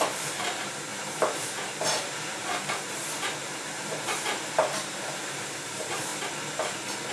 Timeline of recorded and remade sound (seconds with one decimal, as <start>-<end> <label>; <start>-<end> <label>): 0.0-6.1 remade; 6.1-7.1 recorded